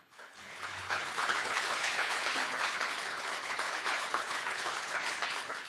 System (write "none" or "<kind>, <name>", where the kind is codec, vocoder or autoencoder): codec, HILCodec